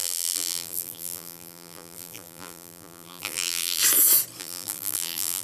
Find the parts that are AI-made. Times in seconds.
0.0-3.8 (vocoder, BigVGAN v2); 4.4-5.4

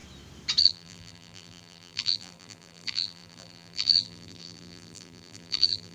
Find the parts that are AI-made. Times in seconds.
0.6-5.9 (vocoder, BigVGAN v2)

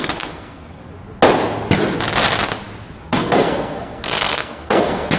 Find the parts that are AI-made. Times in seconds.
0.0-0.8 (codec, SNAC); 3.0-5.2

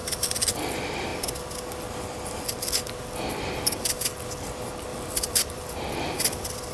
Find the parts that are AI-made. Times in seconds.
0.0-0.6 (vocoder, BigVGAN v2); 4.9-5.7

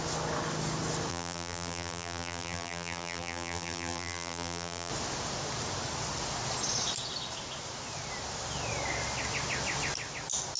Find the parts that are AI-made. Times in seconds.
1.1-4.9 (vocoder, BigVGAN v2)

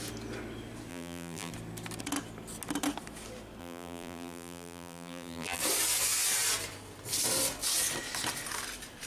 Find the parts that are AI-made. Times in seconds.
0.9-1.5 (vocoder, BigVGAN v2); 3.6-5.6